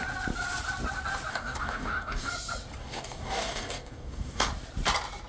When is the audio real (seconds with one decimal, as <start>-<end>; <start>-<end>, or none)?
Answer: 0.0-1.3; 2.3-2.8; 4.5-5.3